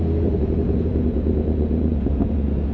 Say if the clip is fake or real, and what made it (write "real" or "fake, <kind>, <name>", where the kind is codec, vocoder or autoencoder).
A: fake, vocoder, Vocos